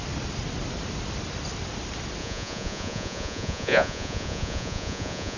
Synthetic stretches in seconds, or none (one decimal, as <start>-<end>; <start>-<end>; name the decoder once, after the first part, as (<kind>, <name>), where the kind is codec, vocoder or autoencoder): 2.2-5.4 (vocoder, Vocos)